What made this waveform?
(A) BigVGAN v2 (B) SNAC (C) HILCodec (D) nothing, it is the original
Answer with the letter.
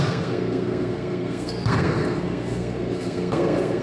B